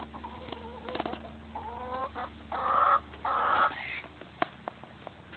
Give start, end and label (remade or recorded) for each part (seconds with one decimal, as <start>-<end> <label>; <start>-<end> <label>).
0.0-5.4 recorded